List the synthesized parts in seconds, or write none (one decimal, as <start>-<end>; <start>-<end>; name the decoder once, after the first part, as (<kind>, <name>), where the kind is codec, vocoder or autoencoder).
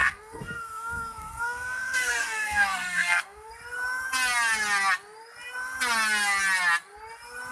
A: 0.0-3.5 (codec, SNAC)